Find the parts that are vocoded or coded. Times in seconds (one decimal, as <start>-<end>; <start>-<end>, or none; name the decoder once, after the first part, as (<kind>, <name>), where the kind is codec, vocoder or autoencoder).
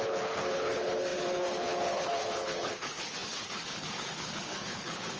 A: 0.0-5.2 (codec, HILCodec)